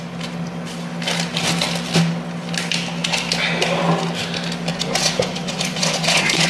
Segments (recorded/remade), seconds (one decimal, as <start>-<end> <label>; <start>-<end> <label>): 0.0-4.7 recorded; 4.7-6.5 remade